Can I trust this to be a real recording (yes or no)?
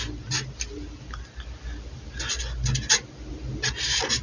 no